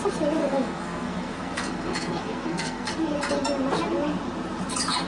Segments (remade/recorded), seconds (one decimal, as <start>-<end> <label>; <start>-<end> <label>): 0.0-0.4 recorded; 0.4-2.9 remade; 2.9-5.1 recorded